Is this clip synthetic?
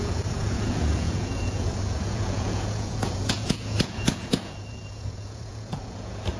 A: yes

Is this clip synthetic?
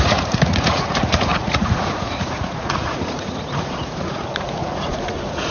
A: yes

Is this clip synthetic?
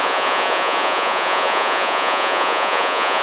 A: yes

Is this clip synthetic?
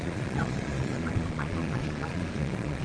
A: yes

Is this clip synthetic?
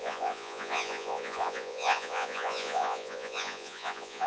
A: yes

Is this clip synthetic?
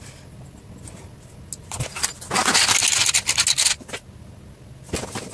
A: no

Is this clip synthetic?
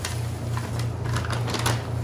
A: no